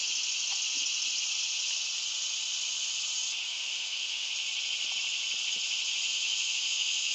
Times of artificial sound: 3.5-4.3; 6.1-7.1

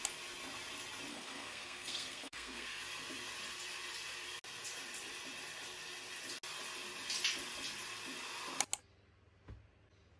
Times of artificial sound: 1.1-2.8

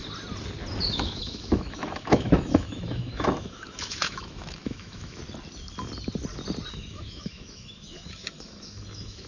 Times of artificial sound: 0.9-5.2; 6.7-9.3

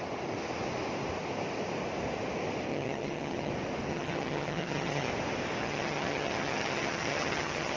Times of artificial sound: 2.7-3.5; 3.9-5.1; 5.6-7.8